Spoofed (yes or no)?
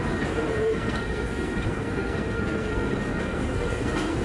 yes